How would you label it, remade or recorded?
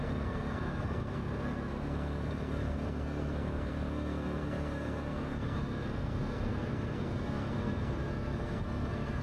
remade